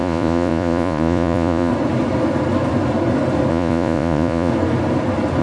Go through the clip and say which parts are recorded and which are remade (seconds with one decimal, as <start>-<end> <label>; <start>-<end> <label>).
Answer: 0.0-1.7 remade; 1.7-3.5 recorded; 3.5-4.5 remade; 4.5-5.4 recorded